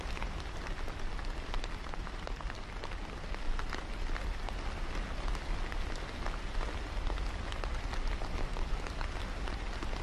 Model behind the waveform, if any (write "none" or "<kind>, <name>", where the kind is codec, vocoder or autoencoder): none